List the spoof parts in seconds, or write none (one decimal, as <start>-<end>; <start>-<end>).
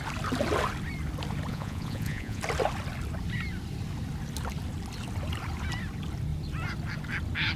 1.5-2.4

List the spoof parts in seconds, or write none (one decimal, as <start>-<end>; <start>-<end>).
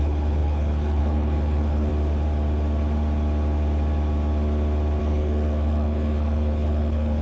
0.0-1.9; 5.0-7.2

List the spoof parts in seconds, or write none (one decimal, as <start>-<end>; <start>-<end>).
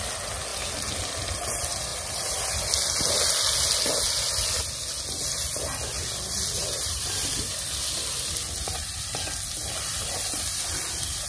1.9-2.5; 6.6-7.5